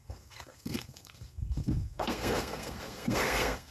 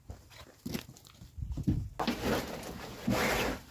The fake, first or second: first